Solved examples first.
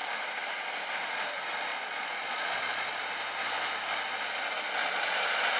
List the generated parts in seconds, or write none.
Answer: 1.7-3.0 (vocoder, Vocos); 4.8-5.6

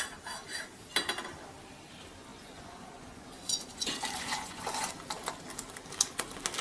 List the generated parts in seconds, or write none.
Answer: 2.3-4.9 (vocoder, Vocos)

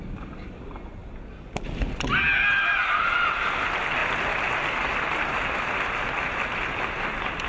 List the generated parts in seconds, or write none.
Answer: none

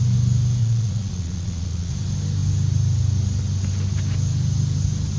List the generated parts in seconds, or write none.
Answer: 0.6-1.9 (vocoder, Vocos)

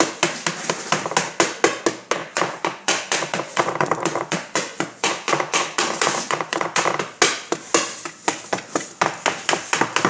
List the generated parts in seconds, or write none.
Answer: 2.2-7.0 (vocoder, Vocos)

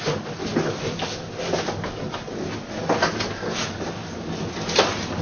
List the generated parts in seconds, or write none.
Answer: none